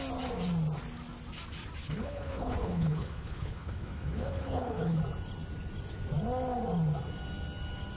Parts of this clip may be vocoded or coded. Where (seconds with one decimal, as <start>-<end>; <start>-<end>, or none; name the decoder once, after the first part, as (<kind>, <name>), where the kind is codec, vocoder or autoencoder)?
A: 1.8-5.0 (codec, HILCodec)